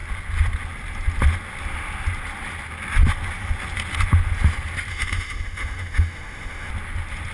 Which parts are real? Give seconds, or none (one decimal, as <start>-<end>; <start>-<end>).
0.0-4.9; 6.7-7.3